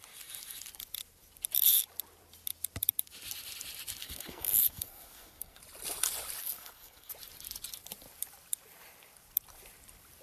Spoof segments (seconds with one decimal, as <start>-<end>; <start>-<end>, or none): 4.0-5.6; 6.4-7.1